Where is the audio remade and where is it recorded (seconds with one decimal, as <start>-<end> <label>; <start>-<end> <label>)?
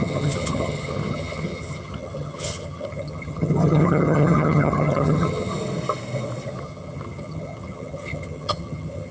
0.0-5.5 remade; 5.5-6.6 recorded; 6.6-9.1 remade